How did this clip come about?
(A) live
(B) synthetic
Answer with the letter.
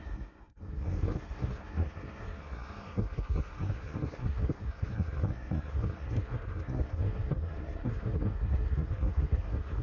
B